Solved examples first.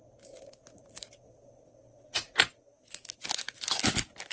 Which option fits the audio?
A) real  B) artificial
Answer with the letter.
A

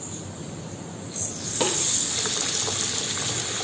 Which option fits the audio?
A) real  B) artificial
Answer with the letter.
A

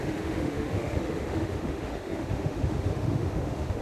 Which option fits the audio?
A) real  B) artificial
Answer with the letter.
B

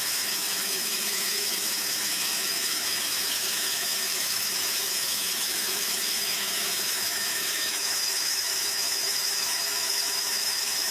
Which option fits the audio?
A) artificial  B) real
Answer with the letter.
A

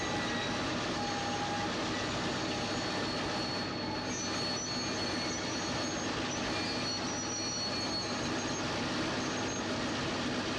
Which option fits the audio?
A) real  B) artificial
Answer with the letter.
A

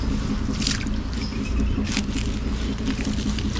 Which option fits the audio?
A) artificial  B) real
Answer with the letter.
B